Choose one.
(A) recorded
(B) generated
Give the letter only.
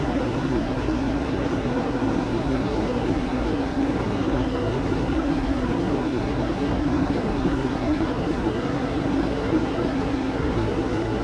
B